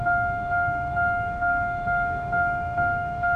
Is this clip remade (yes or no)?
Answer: yes